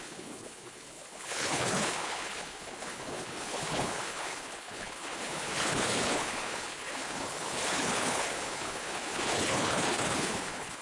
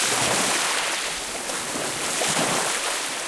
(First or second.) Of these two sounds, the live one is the second